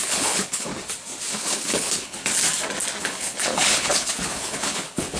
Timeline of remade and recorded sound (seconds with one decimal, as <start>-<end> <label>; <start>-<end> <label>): 0.0-0.7 remade; 0.7-1.4 recorded; 1.4-2.2 remade; 2.2-3.0 recorded; 3.0-5.2 remade